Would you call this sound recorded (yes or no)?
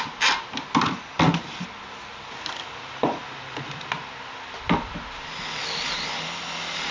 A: yes